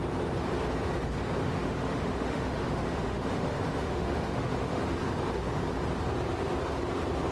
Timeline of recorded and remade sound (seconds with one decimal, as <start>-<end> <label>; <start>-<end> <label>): 0.0-1.4 recorded; 1.4-4.8 remade; 4.8-7.3 recorded